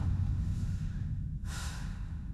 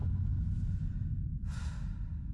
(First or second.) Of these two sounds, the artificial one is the first